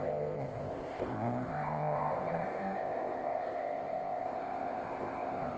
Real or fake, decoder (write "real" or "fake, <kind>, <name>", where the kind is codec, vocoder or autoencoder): fake, codec, ZipCodec